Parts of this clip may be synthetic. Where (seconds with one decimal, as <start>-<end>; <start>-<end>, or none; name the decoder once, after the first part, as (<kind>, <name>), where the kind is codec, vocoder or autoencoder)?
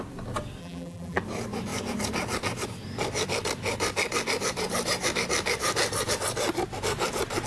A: 0.6-1.2 (vocoder, BigVGAN v2)